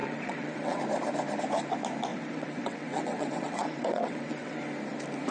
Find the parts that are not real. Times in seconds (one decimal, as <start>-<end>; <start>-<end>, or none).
0.0-0.8; 2.1-4.6